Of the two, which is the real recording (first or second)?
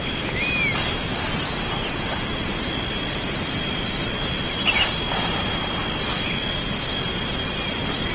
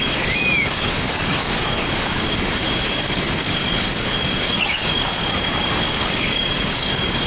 first